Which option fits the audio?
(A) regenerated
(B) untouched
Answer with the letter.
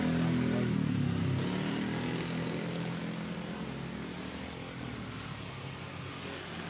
B